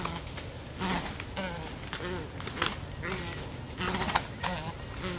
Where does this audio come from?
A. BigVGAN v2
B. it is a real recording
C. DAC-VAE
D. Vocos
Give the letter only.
B